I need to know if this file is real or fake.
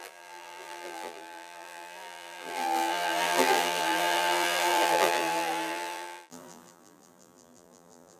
fake